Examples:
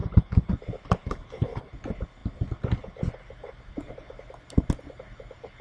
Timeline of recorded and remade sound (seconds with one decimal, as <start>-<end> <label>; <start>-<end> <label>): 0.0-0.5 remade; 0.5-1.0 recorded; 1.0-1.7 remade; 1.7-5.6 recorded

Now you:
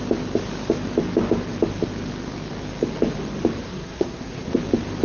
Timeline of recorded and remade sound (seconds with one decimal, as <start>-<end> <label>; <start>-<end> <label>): 0.0-3.6 recorded; 3.6-4.6 remade; 4.6-5.0 recorded

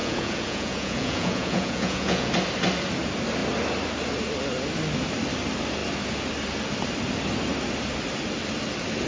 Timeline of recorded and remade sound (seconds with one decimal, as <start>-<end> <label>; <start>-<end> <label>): 0.0-2.3 remade; 2.3-9.1 recorded